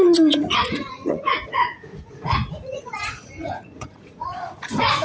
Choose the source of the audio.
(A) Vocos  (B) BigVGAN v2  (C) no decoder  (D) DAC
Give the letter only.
A